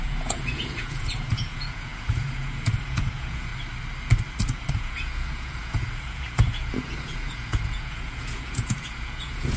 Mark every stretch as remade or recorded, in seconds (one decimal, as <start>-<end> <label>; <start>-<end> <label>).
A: 0.0-3.5 remade; 3.5-4.7 recorded; 4.7-9.6 remade